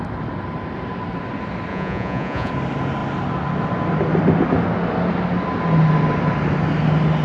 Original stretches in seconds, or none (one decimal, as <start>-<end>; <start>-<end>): 0.0-1.7; 2.5-7.2